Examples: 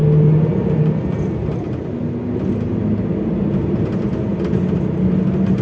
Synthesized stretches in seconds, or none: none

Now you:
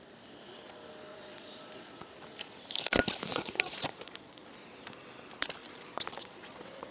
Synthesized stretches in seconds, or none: 1.1-2.1 (vocoder, Vocos); 3.3-4.5; 5.6-6.9